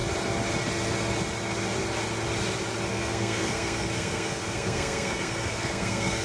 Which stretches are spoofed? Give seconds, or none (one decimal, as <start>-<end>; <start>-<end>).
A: 2.9-6.2